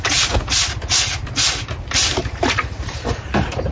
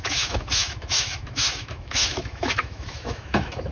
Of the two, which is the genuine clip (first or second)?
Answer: first